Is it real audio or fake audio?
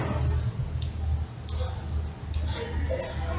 real